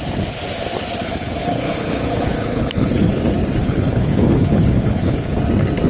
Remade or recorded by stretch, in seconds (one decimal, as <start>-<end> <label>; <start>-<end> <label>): 0.0-1.0 recorded; 1.0-3.1 remade; 3.1-3.6 recorded; 3.6-5.4 remade; 5.4-5.9 recorded